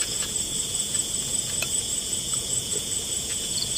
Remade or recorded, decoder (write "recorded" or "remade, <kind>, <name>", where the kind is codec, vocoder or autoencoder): remade, vocoder, Vocos